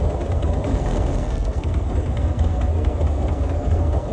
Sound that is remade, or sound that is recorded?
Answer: remade